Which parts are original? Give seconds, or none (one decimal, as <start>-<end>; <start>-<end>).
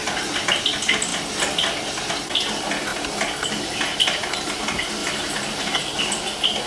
0.0-5.0; 6.0-6.7